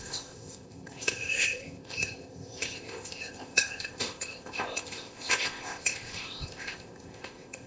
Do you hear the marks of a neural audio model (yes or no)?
yes